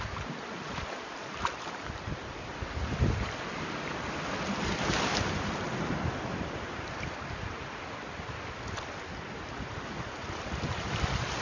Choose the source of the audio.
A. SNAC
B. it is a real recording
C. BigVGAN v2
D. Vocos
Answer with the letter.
B